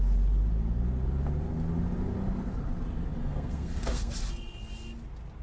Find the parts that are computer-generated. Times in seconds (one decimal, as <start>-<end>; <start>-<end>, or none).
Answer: 3.2-4.1